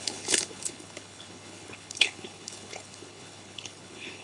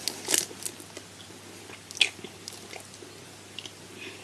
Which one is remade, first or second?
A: first